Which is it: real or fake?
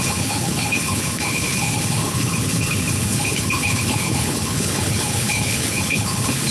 fake